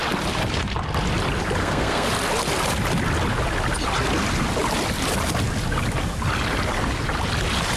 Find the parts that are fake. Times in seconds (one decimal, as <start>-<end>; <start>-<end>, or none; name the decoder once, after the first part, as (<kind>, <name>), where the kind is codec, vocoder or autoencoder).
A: 1.6-2.1 (codec, SNAC)